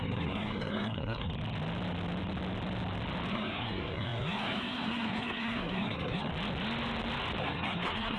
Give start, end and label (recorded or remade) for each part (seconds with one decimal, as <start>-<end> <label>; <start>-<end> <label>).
0.0-1.3 remade; 1.3-3.3 recorded; 3.3-6.3 remade; 6.3-7.4 recorded; 7.4-8.2 remade